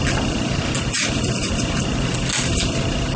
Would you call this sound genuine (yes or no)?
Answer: yes